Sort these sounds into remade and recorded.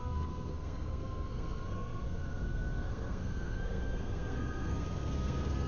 remade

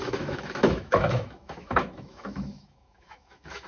remade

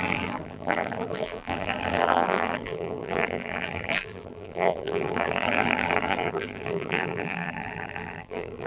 remade